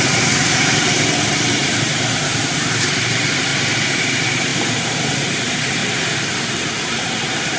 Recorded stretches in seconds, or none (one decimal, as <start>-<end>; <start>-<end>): 3.5-4.0; 5.8-6.4